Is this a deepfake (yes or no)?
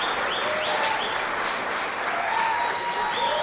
no